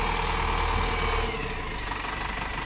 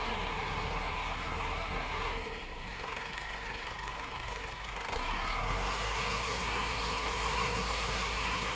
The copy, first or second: second